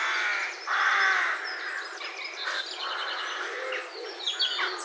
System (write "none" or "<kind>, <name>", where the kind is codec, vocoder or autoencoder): none